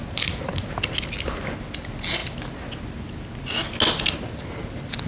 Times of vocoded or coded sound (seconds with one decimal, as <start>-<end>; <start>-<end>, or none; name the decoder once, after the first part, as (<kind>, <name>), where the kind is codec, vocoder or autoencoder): none